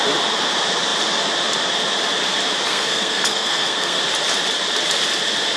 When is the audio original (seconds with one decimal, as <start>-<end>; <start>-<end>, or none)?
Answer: 0.0-2.7; 4.0-5.6